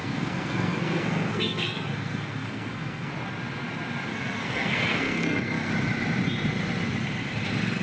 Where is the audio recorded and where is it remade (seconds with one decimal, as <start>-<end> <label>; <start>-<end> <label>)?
0.0-3.1 remade; 3.1-4.1 recorded; 4.1-5.7 remade; 5.7-7.8 recorded